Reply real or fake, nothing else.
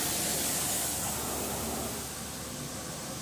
real